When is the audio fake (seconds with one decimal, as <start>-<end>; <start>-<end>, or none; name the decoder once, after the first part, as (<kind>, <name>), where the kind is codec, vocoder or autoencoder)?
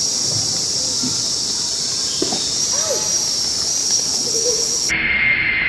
3.8-4.9 (codec, HILCodec)